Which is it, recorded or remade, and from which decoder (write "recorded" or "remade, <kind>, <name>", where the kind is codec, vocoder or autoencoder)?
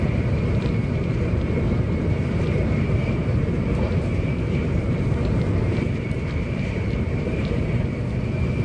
remade, vocoder, BigVGAN v2